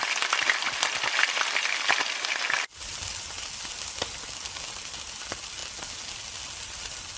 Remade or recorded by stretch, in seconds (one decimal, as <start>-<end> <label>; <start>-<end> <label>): 0.0-7.2 recorded